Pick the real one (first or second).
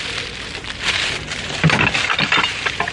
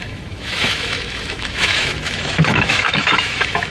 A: first